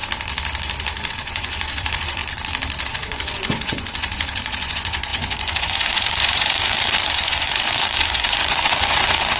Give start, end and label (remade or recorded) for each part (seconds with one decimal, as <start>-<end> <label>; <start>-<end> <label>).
0.0-1.1 recorded; 1.1-2.2 remade; 2.2-2.8 recorded; 2.8-9.4 remade